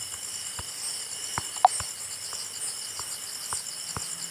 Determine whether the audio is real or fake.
real